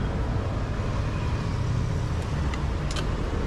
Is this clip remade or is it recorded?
recorded